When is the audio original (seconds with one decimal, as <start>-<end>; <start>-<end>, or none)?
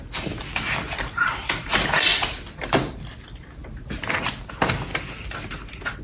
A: 2.1-4.5; 4.9-6.0